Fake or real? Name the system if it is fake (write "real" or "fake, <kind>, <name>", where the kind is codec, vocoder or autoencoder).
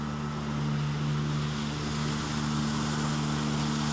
real